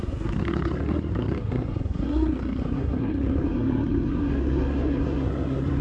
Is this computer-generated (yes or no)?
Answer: yes